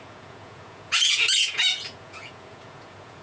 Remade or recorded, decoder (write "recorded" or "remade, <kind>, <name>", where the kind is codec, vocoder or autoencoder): remade, vocoder, Vocos